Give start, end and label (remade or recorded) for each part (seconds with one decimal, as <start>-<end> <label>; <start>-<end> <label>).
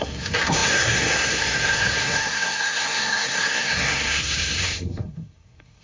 0.0-5.8 remade